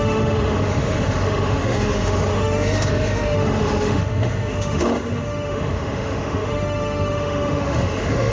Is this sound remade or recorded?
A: remade